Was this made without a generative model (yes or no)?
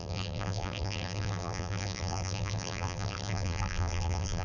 no